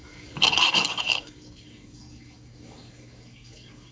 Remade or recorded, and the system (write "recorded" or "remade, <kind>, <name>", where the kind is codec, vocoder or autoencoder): remade, codec, DAC